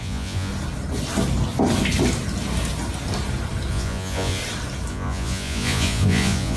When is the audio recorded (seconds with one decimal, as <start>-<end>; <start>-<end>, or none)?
0.5-3.7; 4.4-4.9